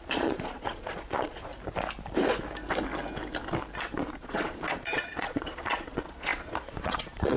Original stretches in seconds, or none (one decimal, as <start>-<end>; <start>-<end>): 1.5-4.1